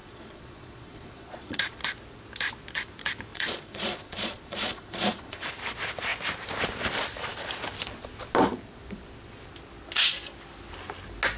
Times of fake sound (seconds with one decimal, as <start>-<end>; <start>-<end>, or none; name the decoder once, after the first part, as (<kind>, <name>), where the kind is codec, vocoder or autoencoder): 0.0-1.8 (vocoder, Vocos); 3.3-5.5

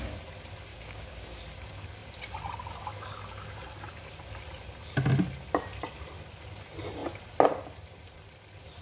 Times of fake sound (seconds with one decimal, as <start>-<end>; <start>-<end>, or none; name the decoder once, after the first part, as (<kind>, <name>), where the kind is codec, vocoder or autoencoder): 0.7-1.4 (codec, DAC)

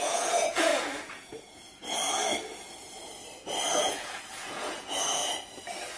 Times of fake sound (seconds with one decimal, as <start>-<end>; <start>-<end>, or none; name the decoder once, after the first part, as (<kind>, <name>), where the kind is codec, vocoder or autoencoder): 0.0-2.0 (vocoder, Vocos); 3.8-5.2

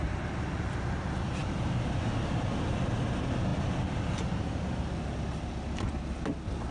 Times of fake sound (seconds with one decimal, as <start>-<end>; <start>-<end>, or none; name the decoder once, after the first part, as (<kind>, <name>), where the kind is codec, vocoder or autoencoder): none

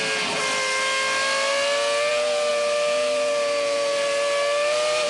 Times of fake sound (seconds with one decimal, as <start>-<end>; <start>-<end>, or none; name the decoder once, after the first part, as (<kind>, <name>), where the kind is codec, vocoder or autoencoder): 2.5-5.1 (vocoder, BigVGAN v2)

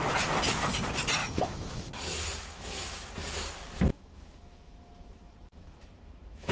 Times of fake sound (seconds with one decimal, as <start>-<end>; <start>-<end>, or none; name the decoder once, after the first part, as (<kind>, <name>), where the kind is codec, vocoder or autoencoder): 1.2-3.1 (autoencoder, DAC-VAE); 3.9-6.5